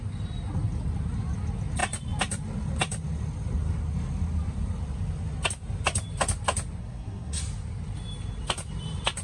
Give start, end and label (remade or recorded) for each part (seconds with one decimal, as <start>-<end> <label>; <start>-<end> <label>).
0.0-6.8 recorded; 6.8-7.4 remade; 7.4-9.2 recorded